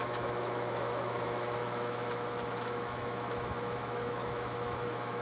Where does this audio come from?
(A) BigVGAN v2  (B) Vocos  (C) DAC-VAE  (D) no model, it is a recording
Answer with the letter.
C